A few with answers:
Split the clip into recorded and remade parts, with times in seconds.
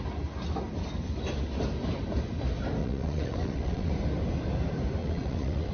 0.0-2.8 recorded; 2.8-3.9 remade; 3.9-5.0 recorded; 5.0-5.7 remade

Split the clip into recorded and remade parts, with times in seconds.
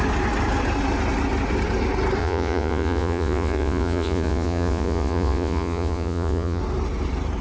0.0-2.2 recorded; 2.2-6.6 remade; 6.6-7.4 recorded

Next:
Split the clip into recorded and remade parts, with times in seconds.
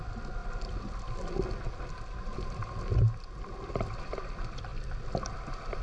0.0-5.8 recorded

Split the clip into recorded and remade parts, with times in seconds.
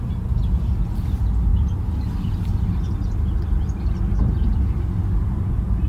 0.0-5.9 recorded